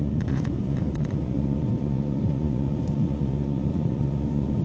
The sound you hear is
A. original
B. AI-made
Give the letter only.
B